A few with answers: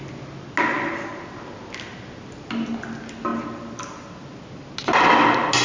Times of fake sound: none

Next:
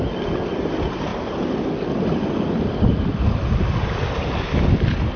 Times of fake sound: none

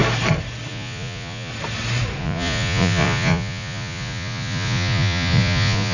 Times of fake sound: 0.7-1.5 (vocoder, Vocos); 2.2-5.9

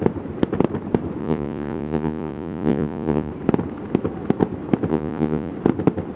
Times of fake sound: 1.2-3.3 (vocoder, Vocos); 4.9-5.5

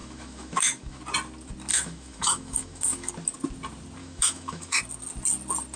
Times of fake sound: 0.0-1.0 (autoencoder, DAC-VAE); 1.7-3.1; 4.0-4.8

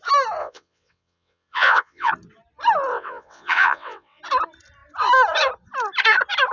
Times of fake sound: 0.4-2.1 (vocoder, WaveNeXt); 2.9-4.2

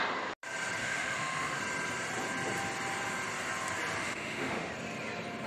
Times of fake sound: 0.8-1.6 (autoencoder, DAC-VAE); 4.0-4.7

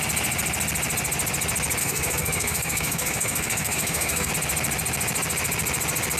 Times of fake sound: 1.8-4.3 (codec, DAC)